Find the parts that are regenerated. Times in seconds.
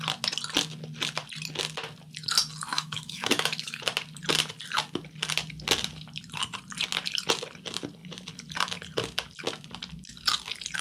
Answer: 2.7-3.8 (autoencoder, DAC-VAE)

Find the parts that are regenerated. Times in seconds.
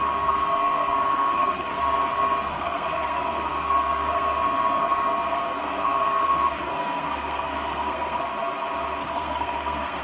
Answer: 0.0-8.3 (codec, SNAC); 9.0-10.0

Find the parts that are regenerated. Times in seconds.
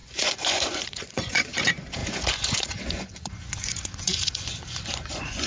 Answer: 0.0-5.5 (vocoder, Vocos)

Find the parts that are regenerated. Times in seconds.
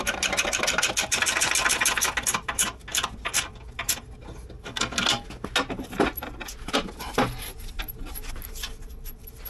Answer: none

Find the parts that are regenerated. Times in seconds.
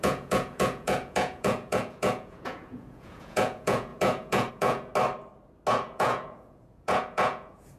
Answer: 0.0-4.9 (vocoder, Vocos); 5.7-7.8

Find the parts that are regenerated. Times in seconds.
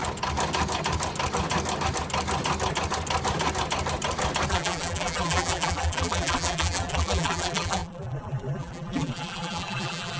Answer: 4.5-10.2 (vocoder, BigVGAN v2)